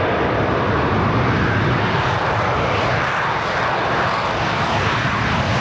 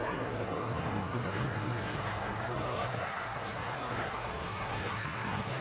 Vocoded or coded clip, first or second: second